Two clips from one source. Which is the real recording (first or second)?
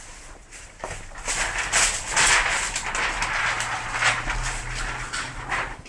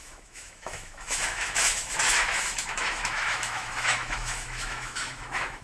first